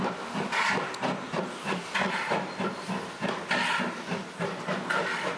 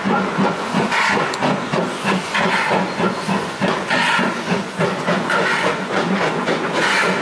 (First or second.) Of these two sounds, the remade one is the second